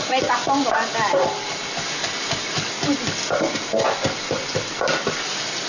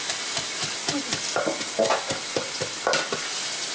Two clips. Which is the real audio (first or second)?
second